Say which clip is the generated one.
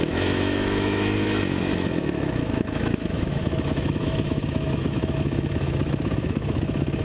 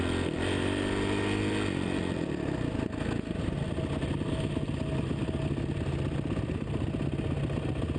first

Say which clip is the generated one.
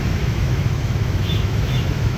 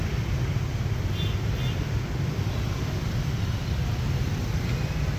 first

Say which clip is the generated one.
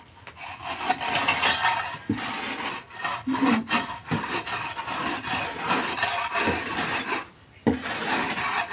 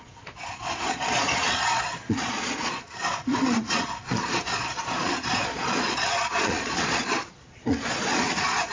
second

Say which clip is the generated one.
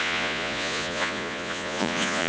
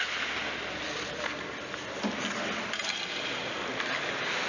first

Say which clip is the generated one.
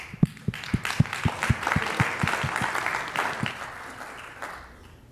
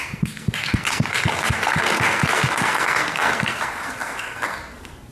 second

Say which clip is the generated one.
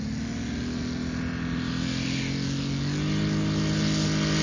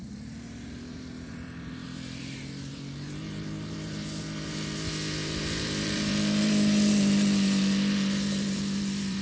second